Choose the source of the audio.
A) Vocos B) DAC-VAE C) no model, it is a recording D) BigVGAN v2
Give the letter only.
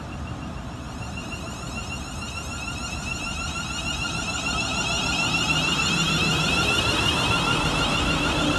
D